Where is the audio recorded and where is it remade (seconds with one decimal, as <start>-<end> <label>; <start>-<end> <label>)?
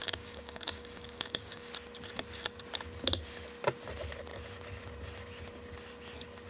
0.0-1.7 remade; 1.7-6.5 recorded